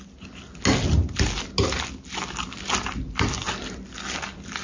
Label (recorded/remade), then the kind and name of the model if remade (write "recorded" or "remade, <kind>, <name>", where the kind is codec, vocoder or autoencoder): recorded